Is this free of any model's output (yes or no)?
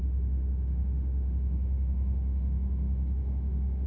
no